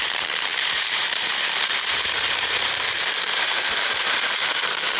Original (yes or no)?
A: no